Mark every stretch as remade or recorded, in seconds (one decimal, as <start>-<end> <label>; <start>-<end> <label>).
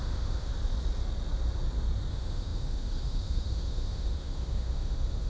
0.0-0.5 remade; 0.5-2.1 recorded; 2.1-5.3 remade